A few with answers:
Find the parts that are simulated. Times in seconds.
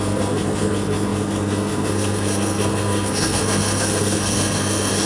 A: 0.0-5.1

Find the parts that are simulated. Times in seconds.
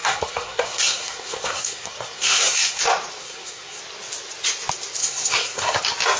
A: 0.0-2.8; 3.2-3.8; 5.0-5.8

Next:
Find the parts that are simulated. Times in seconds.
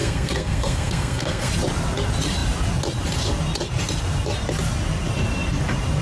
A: 0.0-1.5